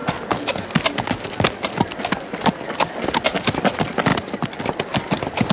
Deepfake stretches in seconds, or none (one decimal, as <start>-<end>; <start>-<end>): none